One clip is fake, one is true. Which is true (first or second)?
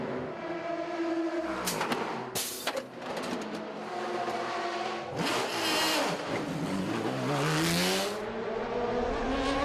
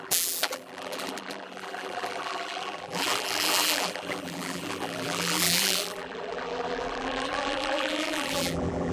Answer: first